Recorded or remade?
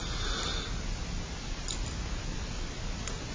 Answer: recorded